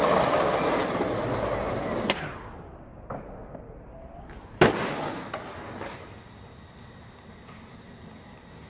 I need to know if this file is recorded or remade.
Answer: recorded